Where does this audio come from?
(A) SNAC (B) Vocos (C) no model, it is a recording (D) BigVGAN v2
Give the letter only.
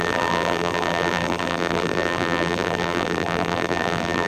D